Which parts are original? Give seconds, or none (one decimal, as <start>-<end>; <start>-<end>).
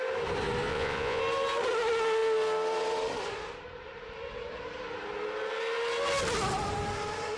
0.0-0.7; 1.2-7.4